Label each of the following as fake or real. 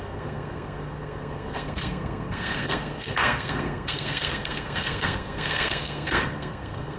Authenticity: fake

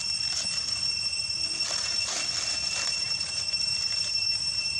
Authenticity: real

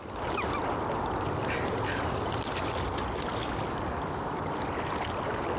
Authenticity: real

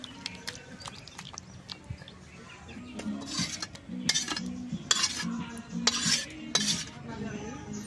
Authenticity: real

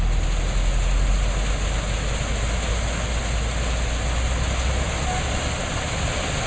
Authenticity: real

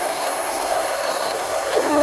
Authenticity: fake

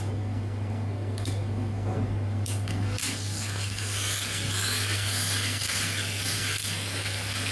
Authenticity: fake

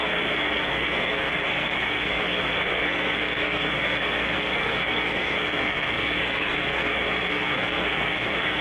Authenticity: fake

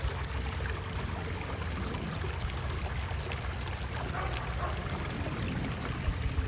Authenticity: real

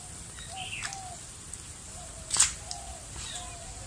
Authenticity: real